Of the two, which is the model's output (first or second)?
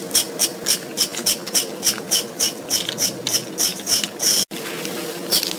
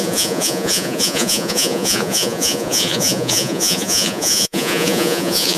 second